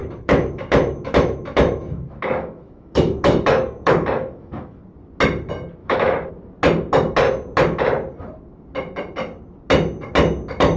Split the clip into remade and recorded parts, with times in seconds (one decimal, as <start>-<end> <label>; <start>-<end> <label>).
0.0-4.8 remade; 4.8-5.8 recorded; 5.8-6.3 remade; 6.3-10.8 recorded